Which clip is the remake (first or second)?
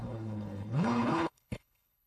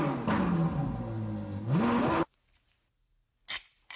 first